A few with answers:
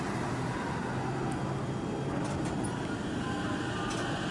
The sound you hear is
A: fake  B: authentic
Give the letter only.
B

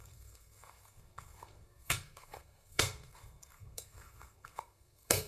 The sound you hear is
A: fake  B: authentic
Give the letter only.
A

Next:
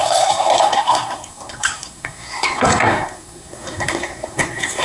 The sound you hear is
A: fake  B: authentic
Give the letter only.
A